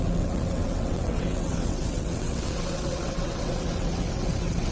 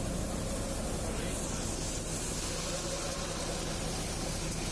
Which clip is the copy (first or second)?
first